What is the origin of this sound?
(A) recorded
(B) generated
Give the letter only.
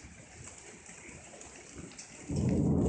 A